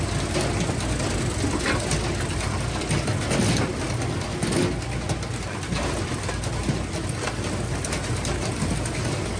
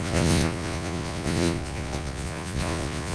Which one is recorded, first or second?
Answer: first